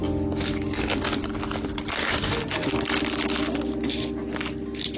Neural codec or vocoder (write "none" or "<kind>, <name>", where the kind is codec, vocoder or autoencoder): none